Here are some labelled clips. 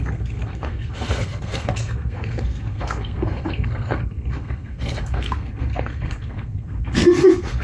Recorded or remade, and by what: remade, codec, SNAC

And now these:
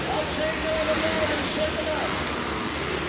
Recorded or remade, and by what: recorded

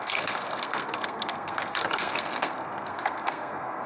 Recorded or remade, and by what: remade, codec, SNAC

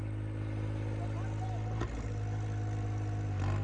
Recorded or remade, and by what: recorded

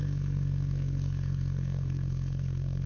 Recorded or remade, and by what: remade, codec, SNAC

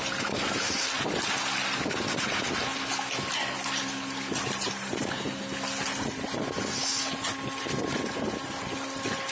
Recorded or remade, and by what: recorded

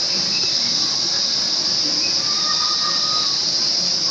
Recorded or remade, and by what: recorded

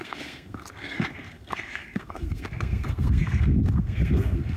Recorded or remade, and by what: remade, codec, SNAC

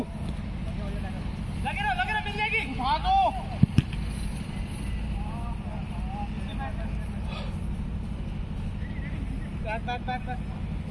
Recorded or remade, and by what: recorded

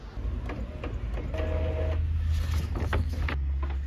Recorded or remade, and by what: recorded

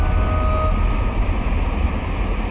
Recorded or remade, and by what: recorded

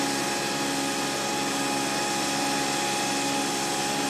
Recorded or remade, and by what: recorded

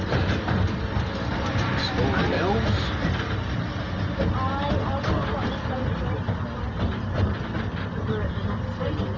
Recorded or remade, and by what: recorded